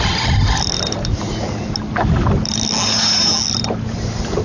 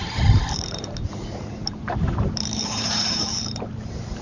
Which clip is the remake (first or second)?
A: second